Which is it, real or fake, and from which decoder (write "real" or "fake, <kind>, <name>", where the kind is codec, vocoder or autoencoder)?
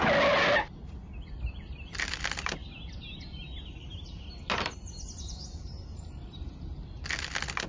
real